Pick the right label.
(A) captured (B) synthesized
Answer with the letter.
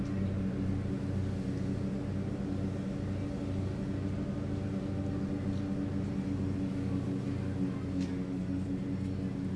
A